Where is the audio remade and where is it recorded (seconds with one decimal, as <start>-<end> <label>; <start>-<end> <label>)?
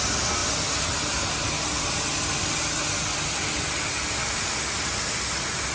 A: 0.0-5.7 recorded